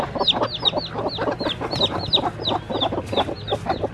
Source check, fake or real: real